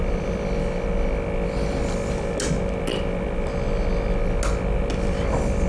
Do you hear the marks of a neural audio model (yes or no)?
no